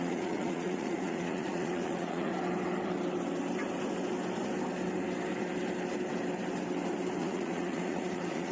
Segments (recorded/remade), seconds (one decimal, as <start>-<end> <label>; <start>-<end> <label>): 0.0-2.3 remade; 2.3-7.2 recorded; 7.2-8.5 remade